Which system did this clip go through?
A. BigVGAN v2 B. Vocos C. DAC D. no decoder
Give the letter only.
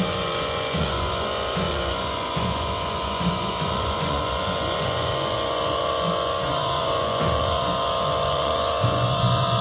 B